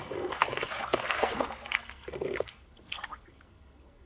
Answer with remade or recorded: remade